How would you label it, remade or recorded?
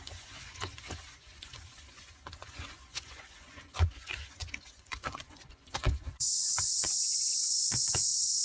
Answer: remade